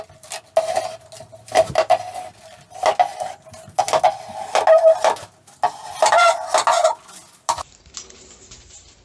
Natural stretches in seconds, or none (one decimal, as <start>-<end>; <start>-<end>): 0.0-9.0